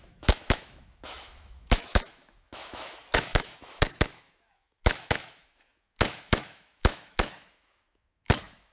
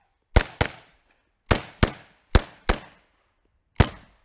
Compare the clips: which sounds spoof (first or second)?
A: first